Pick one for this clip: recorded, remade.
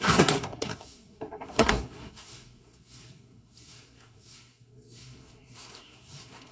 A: remade